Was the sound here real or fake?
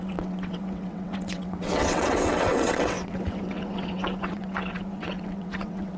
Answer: fake